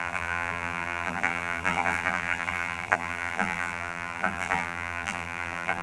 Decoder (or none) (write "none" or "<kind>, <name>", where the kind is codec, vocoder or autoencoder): vocoder, BigVGAN v2